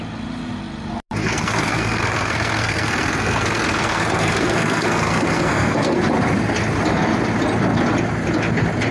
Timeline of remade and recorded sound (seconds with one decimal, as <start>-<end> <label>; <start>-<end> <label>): 0.0-1.2 recorded; 1.2-6.0 remade; 6.0-8.9 recorded